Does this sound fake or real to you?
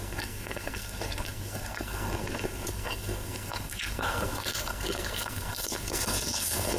fake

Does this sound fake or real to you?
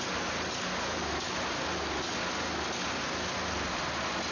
real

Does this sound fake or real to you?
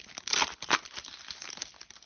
real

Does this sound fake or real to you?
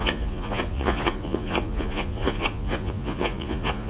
fake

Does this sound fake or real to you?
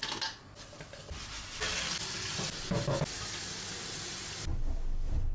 real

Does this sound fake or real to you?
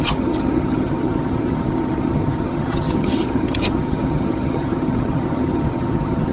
fake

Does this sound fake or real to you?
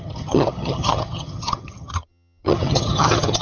fake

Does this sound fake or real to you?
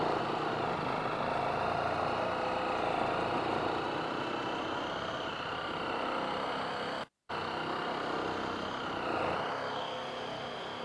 real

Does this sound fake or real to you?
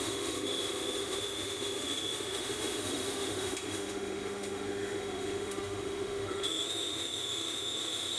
fake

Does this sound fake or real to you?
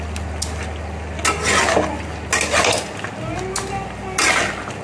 real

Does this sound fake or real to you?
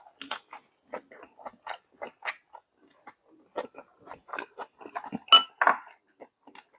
real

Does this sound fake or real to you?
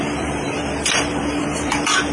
fake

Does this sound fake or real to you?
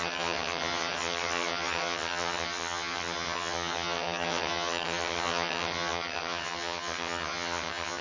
fake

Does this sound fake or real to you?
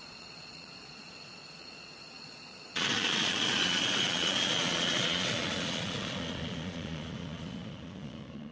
fake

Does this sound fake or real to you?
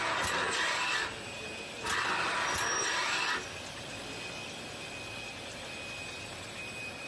real